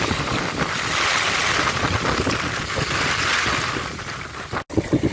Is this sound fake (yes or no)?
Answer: no